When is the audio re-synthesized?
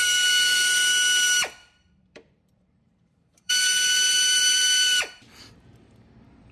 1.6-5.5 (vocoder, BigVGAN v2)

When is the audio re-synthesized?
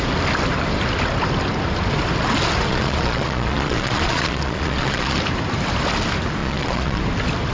2.7-5.2 (vocoder, Vocos); 6.4-7.0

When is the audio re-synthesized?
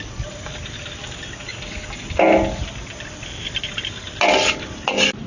none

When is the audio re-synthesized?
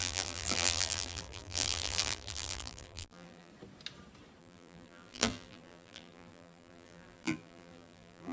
0.0-3.5 (vocoder, BigVGAN v2); 4.4-8.3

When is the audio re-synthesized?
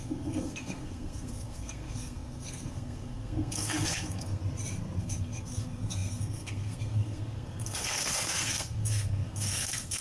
0.0-4.4 (codec, SNAC); 5.0-10.0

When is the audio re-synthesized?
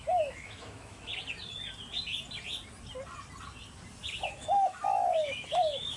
0.0-1.1 (autoencoder, DAC-VAE); 4.3-6.0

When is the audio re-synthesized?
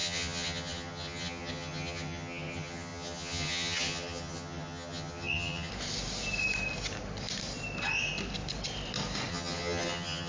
0.0-5.7 (vocoder, HiFi-GAN); 9.3-10.3